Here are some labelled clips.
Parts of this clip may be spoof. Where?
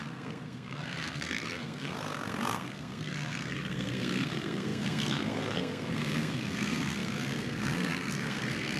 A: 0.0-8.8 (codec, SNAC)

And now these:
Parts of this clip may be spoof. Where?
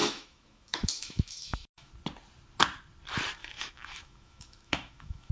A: 0.0-1.9 (autoencoder, DAC-VAE); 3.4-5.3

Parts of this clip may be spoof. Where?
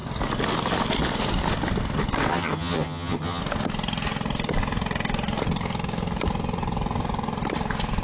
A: 2.3-3.4 (vocoder, HiFi-GAN)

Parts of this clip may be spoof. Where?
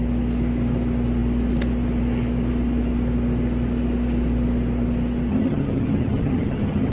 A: 5.3-6.9 (vocoder, HiFi-GAN)